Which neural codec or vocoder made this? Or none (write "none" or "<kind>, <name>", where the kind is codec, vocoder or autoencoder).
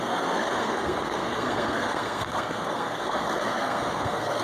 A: codec, SNAC